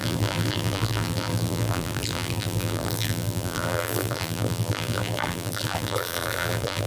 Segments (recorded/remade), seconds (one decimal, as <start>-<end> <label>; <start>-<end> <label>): 0.0-6.9 remade

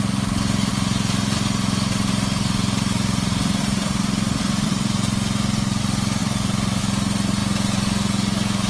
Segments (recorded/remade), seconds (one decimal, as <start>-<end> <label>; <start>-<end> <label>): 0.0-0.7 recorded; 0.7-5.8 remade; 5.8-6.2 recorded; 6.2-6.8 remade; 6.8-8.7 recorded

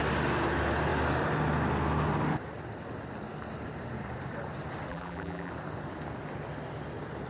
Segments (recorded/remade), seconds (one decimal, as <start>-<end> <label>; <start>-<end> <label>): 0.0-4.9 recorded; 4.9-5.5 remade; 5.5-7.3 recorded

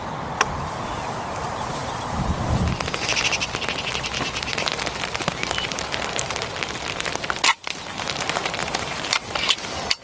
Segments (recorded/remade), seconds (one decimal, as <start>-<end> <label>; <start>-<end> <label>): 0.0-8.6 recorded; 8.6-9.3 remade; 9.3-10.0 recorded